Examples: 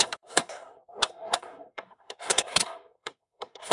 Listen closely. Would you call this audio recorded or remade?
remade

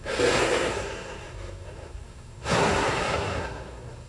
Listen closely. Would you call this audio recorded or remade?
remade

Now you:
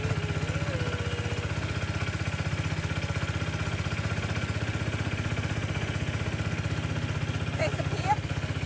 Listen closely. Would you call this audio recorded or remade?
recorded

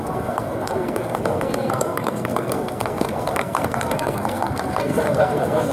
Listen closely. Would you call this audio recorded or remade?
remade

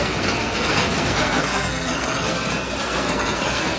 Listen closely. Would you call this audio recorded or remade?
remade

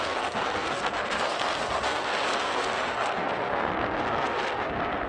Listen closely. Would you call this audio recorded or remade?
remade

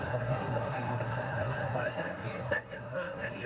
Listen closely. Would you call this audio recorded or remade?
remade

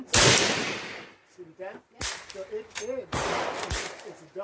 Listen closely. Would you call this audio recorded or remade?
recorded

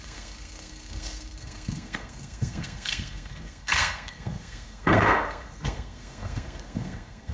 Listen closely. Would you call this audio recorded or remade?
remade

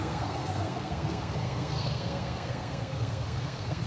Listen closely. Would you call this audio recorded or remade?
remade